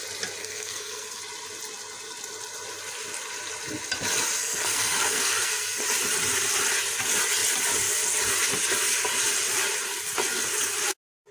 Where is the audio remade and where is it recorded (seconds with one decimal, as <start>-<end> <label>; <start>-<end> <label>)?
0.0-0.4 recorded; 0.4-1.2 remade; 1.2-4.4 recorded; 4.4-5.8 remade; 5.8-11.3 recorded